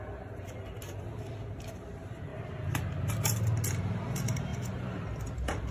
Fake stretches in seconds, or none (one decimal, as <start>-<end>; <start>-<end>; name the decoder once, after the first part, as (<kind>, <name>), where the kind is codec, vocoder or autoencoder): 4.5-5.7 (vocoder, BigVGAN v2)